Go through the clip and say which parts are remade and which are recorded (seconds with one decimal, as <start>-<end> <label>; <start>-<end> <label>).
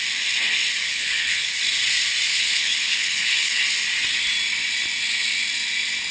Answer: 0.0-0.8 recorded; 0.8-1.6 remade; 1.6-2.3 recorded; 2.3-3.6 remade; 3.6-6.1 recorded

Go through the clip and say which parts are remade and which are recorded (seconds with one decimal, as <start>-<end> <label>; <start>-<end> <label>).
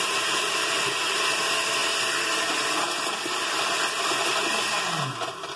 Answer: 0.0-5.6 recorded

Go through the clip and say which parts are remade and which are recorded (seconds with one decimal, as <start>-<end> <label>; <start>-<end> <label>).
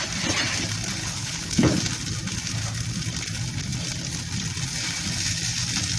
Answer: 0.0-1.0 recorded; 1.0-1.8 remade; 1.8-6.0 recorded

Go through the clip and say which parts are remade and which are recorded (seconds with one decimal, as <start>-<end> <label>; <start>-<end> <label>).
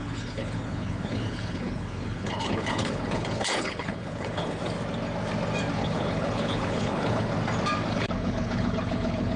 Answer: 0.0-4.6 remade; 4.6-5.8 recorded; 5.8-7.3 remade; 7.3-7.9 recorded; 7.9-9.4 remade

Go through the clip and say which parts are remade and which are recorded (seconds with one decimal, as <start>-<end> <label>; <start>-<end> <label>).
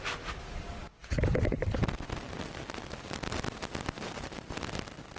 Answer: 0.0-5.2 recorded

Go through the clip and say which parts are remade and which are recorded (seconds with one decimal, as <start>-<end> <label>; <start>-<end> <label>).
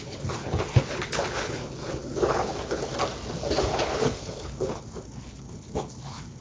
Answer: 0.0-2.9 remade; 2.9-3.7 recorded; 3.7-6.4 remade